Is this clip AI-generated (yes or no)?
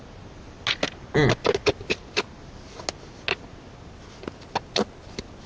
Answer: no